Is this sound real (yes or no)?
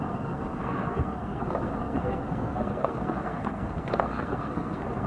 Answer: no